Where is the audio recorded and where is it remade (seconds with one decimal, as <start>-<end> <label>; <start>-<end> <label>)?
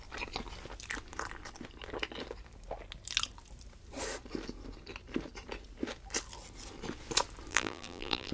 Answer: 0.0-7.5 recorded; 7.5-8.3 remade